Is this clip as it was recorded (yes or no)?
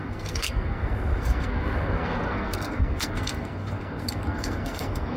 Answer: no